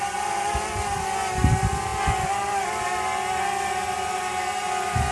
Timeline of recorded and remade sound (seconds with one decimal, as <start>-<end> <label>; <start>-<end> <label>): 0.0-5.1 recorded